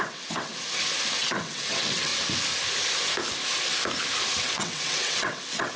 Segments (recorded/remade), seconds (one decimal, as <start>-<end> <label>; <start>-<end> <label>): 0.0-0.5 remade; 0.5-1.2 recorded; 1.2-2.1 remade; 2.1-4.4 recorded; 4.4-5.8 remade